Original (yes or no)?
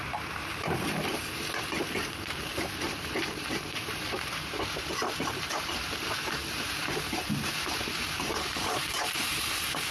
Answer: no